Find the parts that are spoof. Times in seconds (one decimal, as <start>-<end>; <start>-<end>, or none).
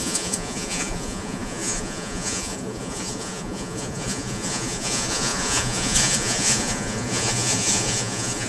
0.0-8.5